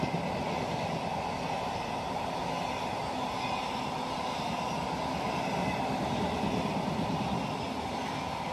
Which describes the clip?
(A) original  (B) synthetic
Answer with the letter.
A